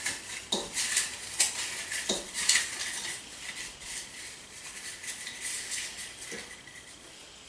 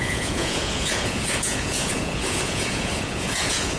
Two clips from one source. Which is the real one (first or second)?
first